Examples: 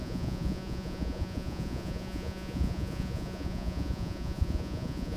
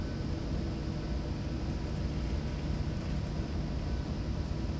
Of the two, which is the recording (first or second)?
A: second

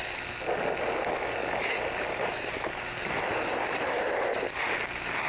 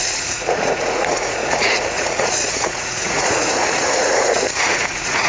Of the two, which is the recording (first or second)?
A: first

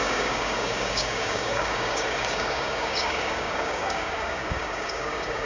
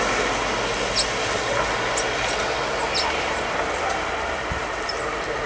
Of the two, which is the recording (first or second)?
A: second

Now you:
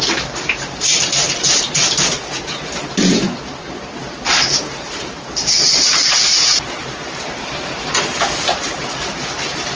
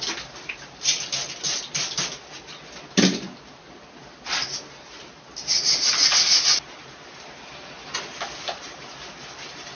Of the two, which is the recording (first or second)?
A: second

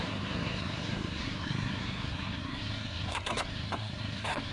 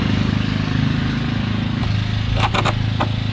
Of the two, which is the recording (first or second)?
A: second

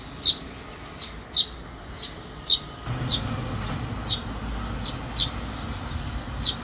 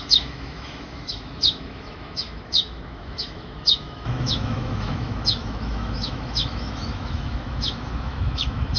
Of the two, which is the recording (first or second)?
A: first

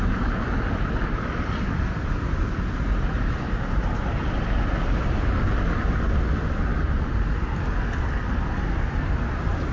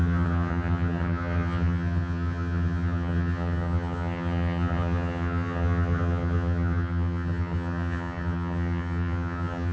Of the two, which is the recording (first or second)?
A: first